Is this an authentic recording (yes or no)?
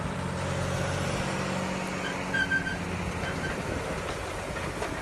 yes